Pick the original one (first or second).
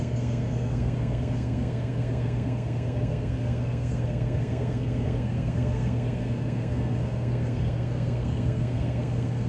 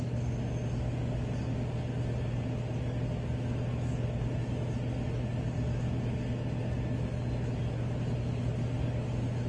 second